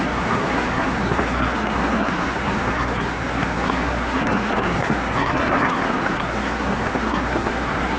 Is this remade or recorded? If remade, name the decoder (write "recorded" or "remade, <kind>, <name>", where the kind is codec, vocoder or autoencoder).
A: remade, codec, SNAC